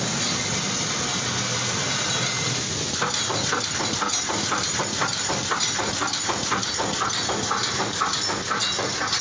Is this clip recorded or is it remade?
recorded